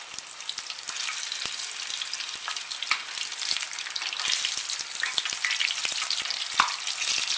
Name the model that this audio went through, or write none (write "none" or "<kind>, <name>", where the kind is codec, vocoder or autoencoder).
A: none